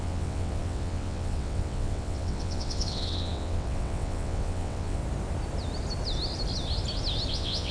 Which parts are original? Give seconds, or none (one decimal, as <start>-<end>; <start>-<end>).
5.0-7.3